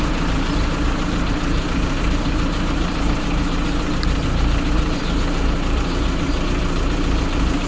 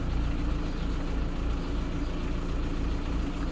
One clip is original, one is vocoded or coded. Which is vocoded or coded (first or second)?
first